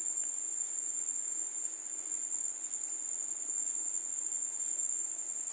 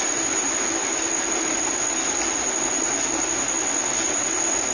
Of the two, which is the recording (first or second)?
second